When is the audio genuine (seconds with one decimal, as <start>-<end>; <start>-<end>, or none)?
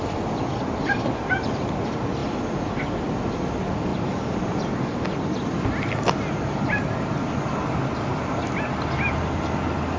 0.0-3.9; 4.9-7.6; 9.2-10.0